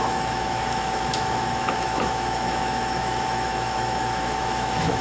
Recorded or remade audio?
remade